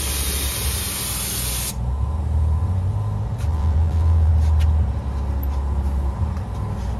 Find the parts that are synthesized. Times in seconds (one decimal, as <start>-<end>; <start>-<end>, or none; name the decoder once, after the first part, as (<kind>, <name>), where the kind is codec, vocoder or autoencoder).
3.5-4.3 (vocoder, BigVGAN v2)